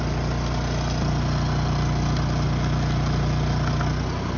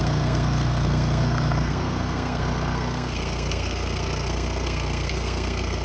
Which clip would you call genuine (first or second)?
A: first